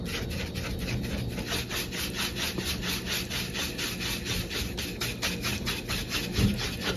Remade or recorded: recorded